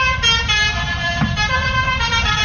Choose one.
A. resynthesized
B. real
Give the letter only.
A